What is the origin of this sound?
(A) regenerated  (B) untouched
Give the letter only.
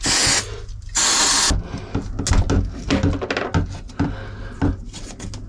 B